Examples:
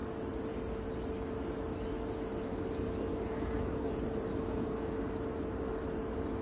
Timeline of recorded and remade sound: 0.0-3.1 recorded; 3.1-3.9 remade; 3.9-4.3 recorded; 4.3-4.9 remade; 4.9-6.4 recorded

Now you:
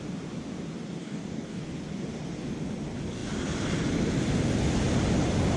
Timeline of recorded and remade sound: 0.0-1.0 recorded; 1.0-1.6 remade; 1.6-5.6 recorded

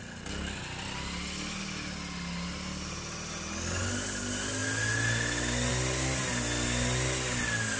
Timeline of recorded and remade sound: 0.0-7.8 recorded

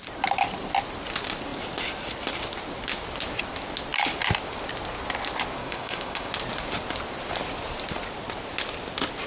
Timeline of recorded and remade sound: 0.0-5.6 recorded; 5.6-6.3 remade; 6.3-9.3 recorded

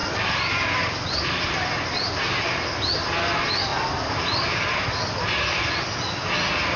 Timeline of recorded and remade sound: 0.0-6.8 recorded

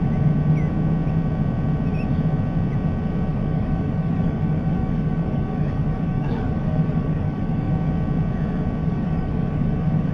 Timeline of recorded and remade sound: 0.0-3.3 recorded; 3.3-7.7 remade; 7.7-8.8 recorded; 8.8-10.1 remade

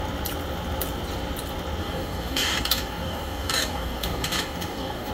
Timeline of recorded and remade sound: 0.0-1.8 recorded; 1.8-5.1 remade

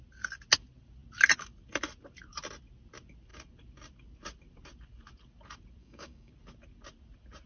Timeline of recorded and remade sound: 0.0-5.8 recorded; 5.8-6.3 remade; 6.3-7.5 recorded